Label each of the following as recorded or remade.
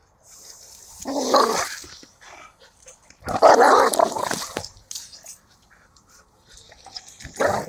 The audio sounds recorded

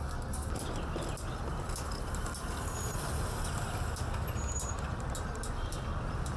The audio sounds recorded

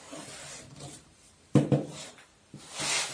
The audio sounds recorded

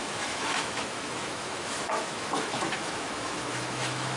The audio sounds remade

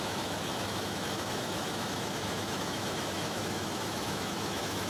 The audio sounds remade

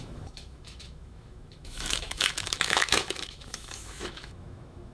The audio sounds remade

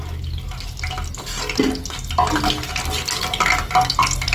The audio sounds recorded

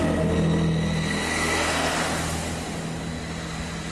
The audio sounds recorded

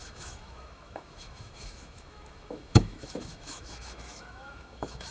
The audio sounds remade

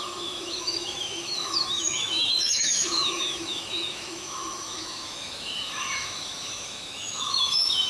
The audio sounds remade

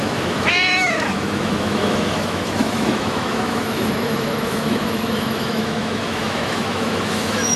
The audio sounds remade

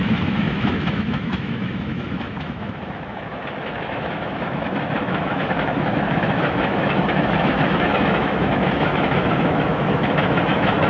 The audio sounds remade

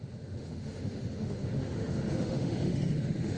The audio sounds remade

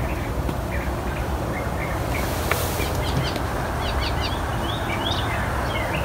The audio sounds recorded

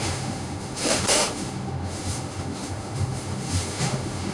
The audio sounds remade